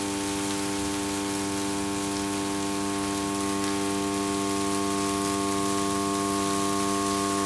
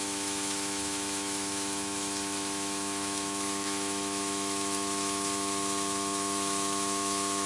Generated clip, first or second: second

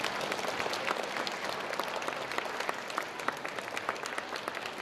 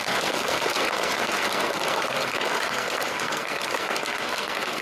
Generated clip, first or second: second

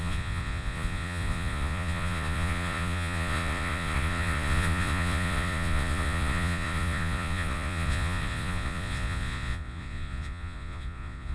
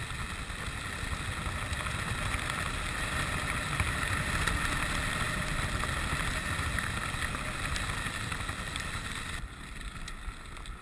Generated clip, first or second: first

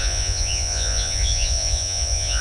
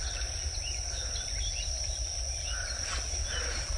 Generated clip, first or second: first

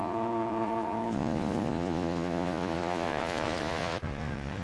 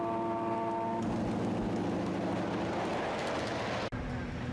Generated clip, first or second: first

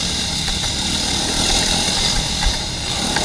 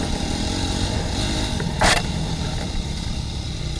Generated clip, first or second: second